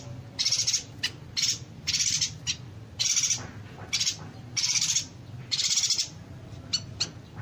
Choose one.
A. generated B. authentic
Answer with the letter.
B